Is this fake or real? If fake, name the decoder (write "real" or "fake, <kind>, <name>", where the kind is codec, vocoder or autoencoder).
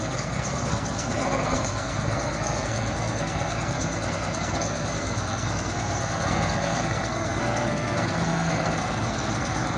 fake, codec, SNAC